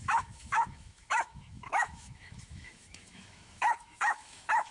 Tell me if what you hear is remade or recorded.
remade